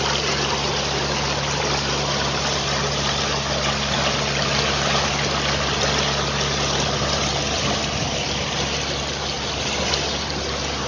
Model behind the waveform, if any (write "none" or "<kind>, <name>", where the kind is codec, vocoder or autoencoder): none